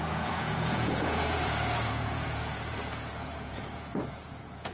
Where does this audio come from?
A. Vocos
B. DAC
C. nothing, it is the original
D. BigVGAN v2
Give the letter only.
A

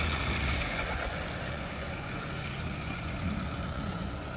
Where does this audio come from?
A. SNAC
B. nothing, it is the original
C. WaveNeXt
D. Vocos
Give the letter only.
D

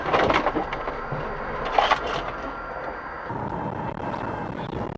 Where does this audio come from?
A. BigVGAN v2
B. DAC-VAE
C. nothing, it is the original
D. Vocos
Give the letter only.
C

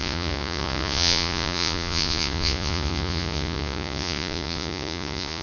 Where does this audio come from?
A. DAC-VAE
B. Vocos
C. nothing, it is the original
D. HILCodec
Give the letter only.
B